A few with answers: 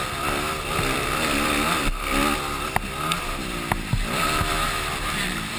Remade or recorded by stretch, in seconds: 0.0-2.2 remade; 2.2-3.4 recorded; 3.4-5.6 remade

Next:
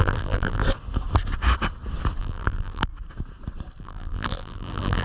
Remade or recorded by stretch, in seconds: 0.0-0.6 remade; 0.6-2.2 recorded; 2.2-2.9 remade; 2.9-3.8 recorded; 3.8-5.0 remade